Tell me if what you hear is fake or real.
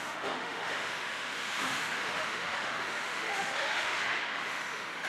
fake